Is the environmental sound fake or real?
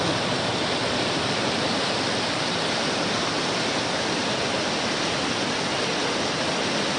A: real